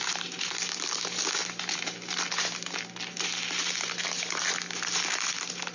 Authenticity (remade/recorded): recorded